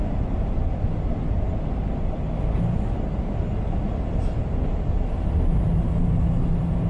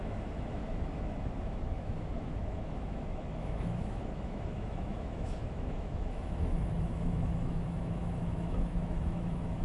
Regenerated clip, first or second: second